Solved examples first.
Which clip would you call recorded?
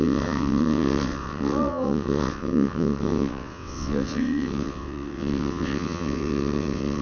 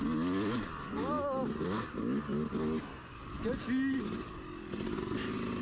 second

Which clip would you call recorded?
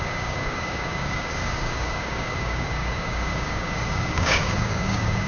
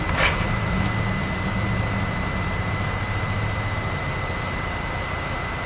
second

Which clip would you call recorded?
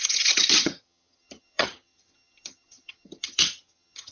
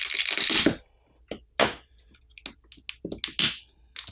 second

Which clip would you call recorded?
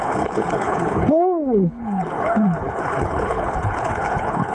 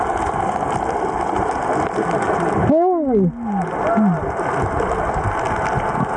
second